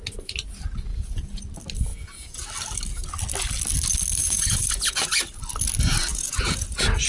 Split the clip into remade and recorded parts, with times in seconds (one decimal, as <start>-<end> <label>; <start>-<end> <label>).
0.0-0.9 recorded; 0.9-1.4 remade; 1.4-1.9 recorded; 1.9-2.5 remade; 2.5-4.2 recorded; 4.2-5.4 remade; 5.4-6.1 recorded; 6.1-7.1 remade

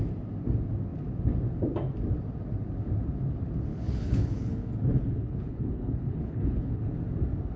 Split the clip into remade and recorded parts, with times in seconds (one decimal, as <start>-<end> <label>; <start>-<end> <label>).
0.0-3.7 recorded; 3.7-6.8 remade; 6.8-7.6 recorded